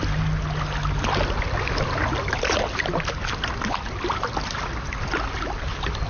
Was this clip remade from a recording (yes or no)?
no